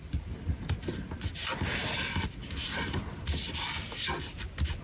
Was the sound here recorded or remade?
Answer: recorded